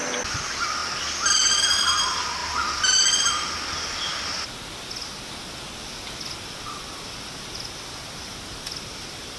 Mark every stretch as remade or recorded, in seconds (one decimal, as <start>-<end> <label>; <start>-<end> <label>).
0.0-9.4 recorded